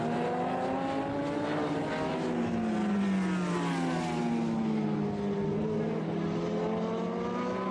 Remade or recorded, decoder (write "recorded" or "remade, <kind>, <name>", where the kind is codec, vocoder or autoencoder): recorded